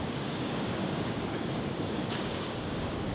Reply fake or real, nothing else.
fake